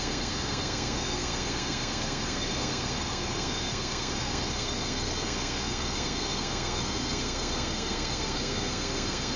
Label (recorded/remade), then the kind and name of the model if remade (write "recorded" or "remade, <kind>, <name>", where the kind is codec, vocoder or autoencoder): remade, codec, SNAC